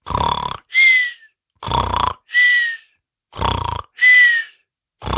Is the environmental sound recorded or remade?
recorded